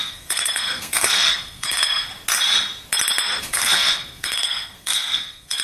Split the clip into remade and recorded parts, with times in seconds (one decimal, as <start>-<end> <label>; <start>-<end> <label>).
0.0-2.1 remade; 2.1-3.4 recorded; 3.4-5.6 remade